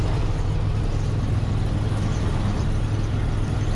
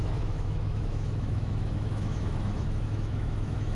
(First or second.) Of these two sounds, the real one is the first